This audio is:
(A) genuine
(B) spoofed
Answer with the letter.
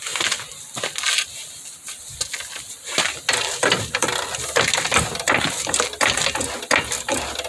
A